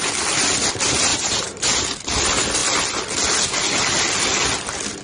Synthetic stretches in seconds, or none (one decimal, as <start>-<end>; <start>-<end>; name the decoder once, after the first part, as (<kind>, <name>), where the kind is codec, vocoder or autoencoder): 1.1-1.8 (vocoder, BigVGAN v2)